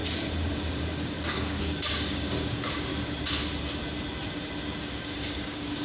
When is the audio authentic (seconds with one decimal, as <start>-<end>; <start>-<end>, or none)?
0.0-0.5; 2.9-4.8